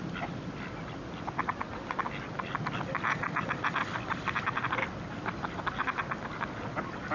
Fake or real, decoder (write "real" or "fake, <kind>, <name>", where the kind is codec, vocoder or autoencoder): real